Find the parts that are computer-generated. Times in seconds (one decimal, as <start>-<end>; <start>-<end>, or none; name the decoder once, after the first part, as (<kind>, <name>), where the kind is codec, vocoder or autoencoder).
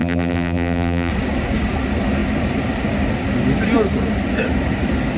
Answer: 0.0-1.1 (vocoder, BigVGAN v2)